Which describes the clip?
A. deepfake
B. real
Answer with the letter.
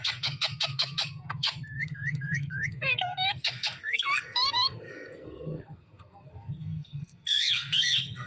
A